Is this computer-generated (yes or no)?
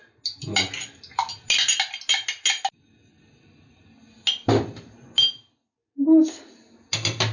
no